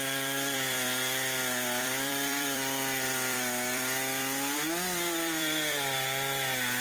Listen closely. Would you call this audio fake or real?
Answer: fake